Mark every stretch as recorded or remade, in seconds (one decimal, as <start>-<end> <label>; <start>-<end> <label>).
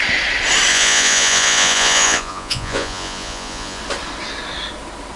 0.0-0.7 recorded; 0.7-3.8 remade; 3.8-5.2 recorded